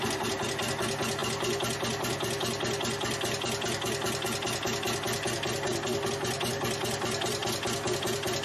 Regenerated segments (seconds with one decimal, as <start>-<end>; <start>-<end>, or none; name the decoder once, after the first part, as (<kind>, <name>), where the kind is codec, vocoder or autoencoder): none